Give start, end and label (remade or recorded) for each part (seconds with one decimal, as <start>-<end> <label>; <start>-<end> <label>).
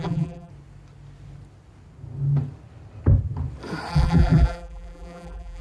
0.0-0.5 remade; 0.5-3.9 recorded; 3.9-5.6 remade